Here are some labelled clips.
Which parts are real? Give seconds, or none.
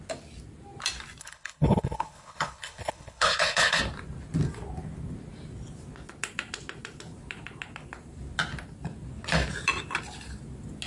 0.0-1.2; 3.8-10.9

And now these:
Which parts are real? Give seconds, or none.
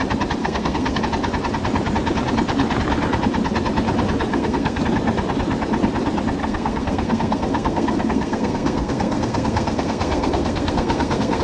0.0-0.4; 1.0-4.3; 4.8-6.4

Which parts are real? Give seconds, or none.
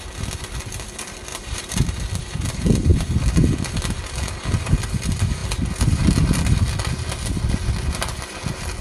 0.0-1.3; 2.0-8.8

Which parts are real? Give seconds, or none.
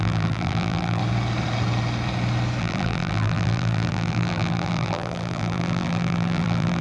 1.0-2.6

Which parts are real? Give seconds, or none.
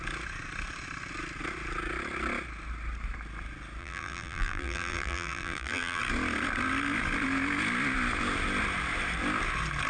0.0-3.8; 6.0-9.9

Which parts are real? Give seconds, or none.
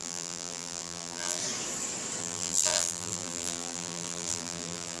1.4-2.2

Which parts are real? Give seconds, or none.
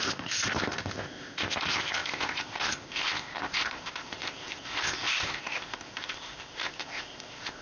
none